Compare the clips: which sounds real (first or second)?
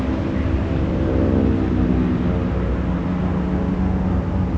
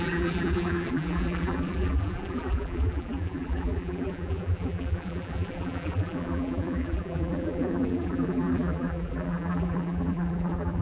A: first